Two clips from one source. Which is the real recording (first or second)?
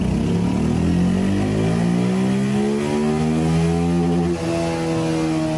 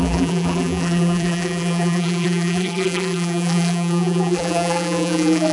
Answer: first